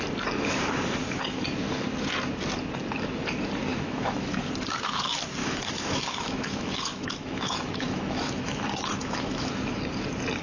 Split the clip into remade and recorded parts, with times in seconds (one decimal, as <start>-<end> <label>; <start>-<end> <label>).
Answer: 0.0-3.7 recorded; 3.7-4.5 remade; 4.5-5.4 recorded; 5.4-9.5 remade; 9.5-10.4 recorded